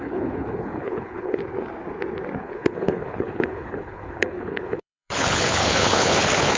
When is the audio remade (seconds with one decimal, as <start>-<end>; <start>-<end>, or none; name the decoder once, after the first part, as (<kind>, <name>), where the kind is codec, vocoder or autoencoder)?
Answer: 0.0-1.4 (codec, HILCodec); 2.4-6.6